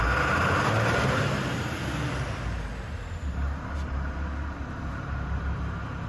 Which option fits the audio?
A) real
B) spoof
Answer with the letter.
A